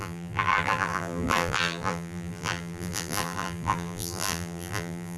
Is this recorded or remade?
remade